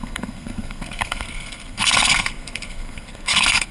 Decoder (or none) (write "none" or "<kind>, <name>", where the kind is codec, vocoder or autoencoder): codec, SNAC